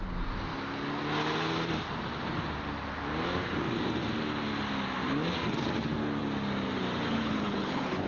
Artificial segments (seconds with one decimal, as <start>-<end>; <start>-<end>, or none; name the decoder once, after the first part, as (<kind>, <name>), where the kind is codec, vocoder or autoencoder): 7.2-8.1 (codec, HILCodec)